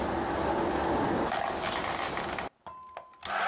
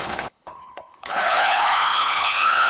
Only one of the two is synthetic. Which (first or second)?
second